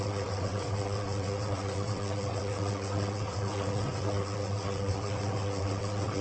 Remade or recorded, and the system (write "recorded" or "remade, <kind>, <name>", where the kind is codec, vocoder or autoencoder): remade, vocoder, WaveNeXt